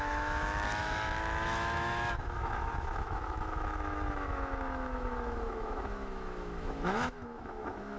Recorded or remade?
remade